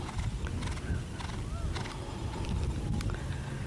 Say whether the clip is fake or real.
real